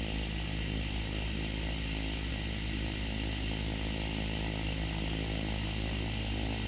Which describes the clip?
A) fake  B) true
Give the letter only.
B